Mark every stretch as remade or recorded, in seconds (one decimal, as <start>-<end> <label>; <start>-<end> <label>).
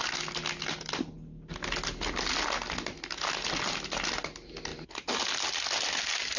0.0-6.4 recorded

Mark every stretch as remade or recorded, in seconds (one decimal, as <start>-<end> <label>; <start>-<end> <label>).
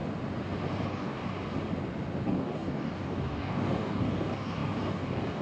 0.0-0.9 recorded; 0.9-1.3 remade; 1.3-2.2 recorded; 2.2-5.4 remade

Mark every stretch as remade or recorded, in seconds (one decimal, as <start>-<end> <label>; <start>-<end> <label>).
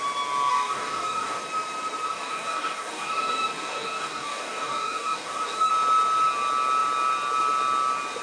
0.0-0.5 recorded; 0.5-1.4 remade; 1.4-2.1 recorded; 2.1-5.7 remade; 5.7-8.2 recorded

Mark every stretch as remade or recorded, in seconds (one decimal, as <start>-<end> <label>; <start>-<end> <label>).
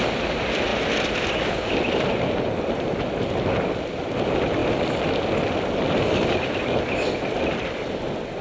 0.0-8.4 recorded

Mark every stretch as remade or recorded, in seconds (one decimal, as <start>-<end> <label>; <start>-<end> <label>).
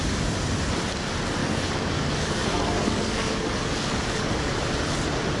0.0-1.4 recorded; 1.4-4.6 remade; 4.6-5.4 recorded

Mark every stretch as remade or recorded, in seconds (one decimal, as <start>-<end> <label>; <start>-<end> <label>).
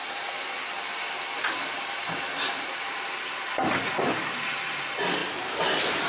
0.0-6.1 recorded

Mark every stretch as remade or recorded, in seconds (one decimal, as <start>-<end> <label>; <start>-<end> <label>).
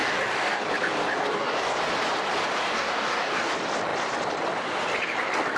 0.0-0.6 remade; 0.6-1.2 recorded; 1.2-1.7 remade; 1.7-2.6 recorded; 2.6-3.5 remade; 3.5-5.6 recorded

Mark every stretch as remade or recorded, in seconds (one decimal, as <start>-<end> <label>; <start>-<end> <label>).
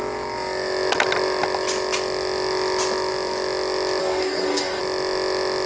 0.0-4.0 recorded; 4.0-4.8 remade; 4.8-5.7 recorded